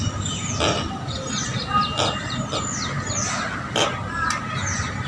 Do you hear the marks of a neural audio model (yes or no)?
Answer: no